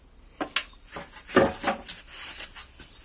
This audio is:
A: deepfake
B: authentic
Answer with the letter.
B